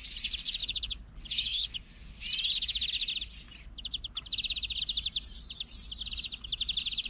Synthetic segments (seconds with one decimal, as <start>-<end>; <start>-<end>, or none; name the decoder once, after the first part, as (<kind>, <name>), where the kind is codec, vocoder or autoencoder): 0.6-1.8 (codec, HILCodec)